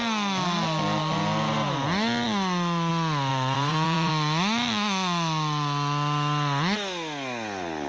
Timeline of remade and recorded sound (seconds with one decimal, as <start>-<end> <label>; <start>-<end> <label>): 0.0-3.3 recorded; 3.3-4.1 remade; 4.1-7.9 recorded